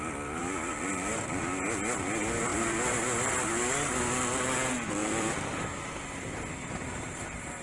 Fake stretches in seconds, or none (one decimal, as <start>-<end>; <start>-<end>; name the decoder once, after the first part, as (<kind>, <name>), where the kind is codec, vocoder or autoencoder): 0.4-0.9 (vocoder, BigVGAN v2); 2.5-3.3; 5.0-6.7